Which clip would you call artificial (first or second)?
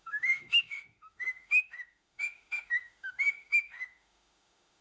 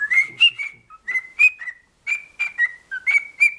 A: first